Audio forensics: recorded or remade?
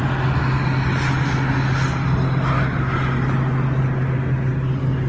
recorded